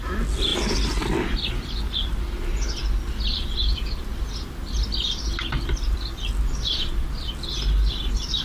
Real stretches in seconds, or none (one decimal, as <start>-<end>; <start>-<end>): 0.0-8.4